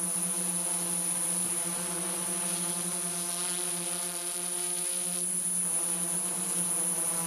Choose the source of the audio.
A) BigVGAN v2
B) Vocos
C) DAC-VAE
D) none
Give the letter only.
D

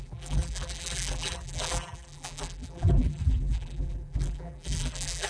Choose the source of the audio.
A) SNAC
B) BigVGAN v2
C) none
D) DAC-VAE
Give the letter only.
B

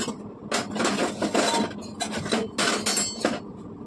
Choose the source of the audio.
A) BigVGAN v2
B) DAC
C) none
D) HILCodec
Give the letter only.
C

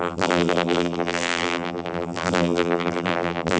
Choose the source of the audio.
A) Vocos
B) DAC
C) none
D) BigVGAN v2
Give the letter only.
D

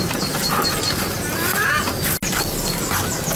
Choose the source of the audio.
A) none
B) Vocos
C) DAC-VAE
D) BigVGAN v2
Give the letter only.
A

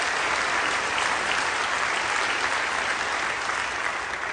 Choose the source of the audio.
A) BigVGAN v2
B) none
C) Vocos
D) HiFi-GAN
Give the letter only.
A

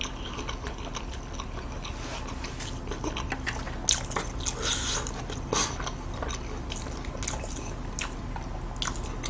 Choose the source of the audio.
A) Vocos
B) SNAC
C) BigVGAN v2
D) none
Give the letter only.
D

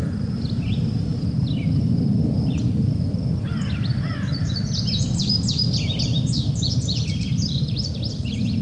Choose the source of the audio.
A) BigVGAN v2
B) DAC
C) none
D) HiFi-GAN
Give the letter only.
A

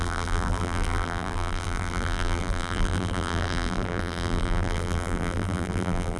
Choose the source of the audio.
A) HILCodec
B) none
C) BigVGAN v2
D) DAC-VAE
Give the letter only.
C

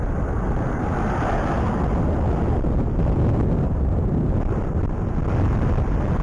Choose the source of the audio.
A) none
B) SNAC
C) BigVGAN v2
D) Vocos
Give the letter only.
A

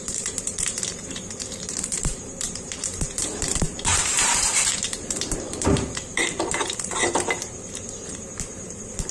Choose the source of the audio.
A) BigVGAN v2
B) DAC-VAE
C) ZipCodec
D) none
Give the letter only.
A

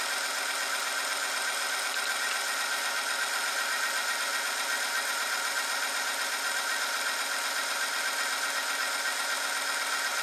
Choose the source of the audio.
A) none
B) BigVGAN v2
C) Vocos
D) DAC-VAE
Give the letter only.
A